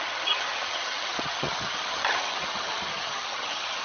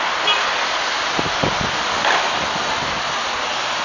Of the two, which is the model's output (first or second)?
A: first